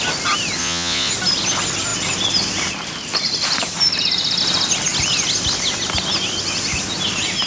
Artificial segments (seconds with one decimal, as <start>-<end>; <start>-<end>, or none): 0.6-1.1